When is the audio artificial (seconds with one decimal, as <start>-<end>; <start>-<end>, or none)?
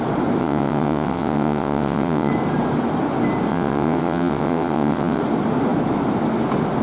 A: 0.4-2.3; 3.5-5.2